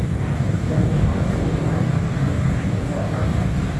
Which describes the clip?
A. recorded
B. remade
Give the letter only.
B